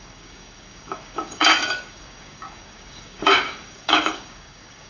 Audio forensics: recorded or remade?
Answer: remade